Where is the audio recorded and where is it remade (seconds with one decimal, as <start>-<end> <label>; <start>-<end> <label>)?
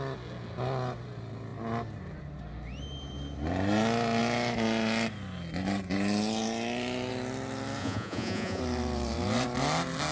0.0-7.8 recorded; 7.8-8.6 remade; 8.6-10.1 recorded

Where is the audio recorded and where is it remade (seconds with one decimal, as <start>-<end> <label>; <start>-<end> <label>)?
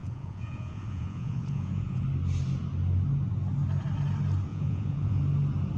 0.0-2.0 remade; 2.0-4.5 recorded; 4.5-5.2 remade; 5.2-5.8 recorded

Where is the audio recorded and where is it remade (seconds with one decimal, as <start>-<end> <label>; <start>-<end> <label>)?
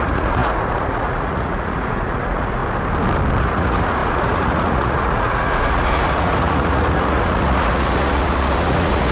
0.0-2.6 remade; 2.6-3.4 recorded; 3.4-9.1 remade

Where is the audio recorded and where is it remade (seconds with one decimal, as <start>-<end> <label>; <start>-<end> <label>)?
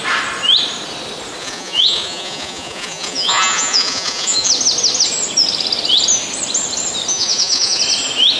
0.0-1.4 recorded; 1.4-4.5 remade; 4.5-7.1 recorded; 7.1-7.8 remade; 7.8-8.4 recorded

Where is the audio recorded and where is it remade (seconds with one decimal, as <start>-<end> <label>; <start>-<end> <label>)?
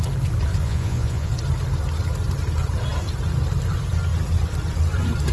0.0-0.6 recorded; 0.6-1.3 remade; 1.3-5.3 recorded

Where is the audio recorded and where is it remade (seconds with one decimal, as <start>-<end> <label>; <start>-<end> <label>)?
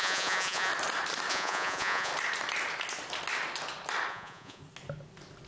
0.0-0.7 remade; 0.7-1.3 recorded; 1.3-2.1 remade; 2.1-4.1 recorded; 4.1-4.6 remade; 4.6-5.5 recorded